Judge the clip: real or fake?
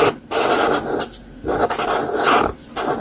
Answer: real